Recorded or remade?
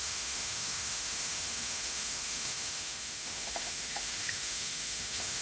remade